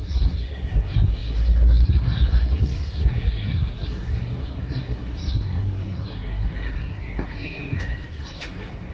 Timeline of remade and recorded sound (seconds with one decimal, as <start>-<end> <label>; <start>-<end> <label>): 0.0-8.9 remade